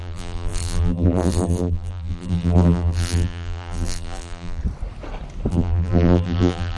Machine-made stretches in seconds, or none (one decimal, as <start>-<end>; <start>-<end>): 0.0-4.6; 5.5-6.8